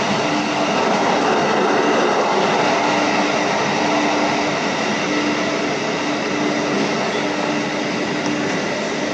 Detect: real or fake real